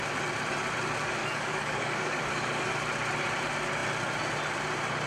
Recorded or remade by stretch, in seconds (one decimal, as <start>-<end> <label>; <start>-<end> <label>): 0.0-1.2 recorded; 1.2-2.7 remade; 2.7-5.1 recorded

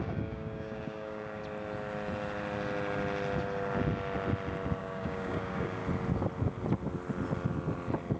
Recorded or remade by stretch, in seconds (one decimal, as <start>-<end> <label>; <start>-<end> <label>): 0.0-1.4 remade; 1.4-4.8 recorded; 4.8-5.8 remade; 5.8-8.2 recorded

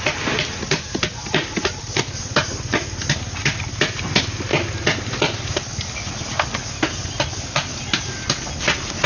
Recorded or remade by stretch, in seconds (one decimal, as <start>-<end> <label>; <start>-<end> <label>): 0.0-9.1 recorded